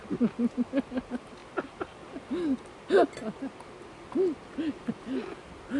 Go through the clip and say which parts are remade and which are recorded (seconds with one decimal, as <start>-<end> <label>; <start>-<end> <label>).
0.0-5.8 recorded